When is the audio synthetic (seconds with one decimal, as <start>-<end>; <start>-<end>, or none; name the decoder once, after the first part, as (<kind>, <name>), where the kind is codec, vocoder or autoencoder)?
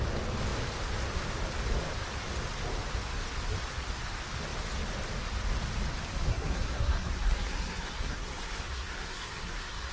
6.3-9.9 (codec, SNAC)